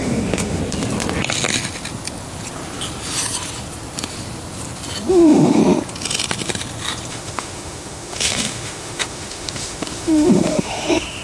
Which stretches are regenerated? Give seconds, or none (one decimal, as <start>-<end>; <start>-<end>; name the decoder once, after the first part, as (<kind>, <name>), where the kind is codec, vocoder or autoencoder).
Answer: 0.0-0.6 (autoencoder, DAC-VAE); 5.1-5.6; 7.1-11.2